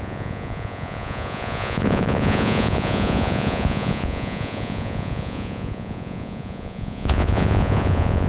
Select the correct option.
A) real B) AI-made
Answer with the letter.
B